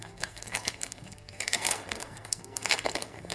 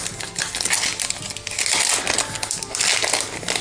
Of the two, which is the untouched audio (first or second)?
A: second